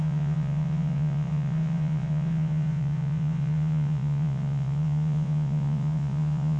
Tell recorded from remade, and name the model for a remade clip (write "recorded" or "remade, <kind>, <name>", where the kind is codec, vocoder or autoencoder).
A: remade, vocoder, Vocos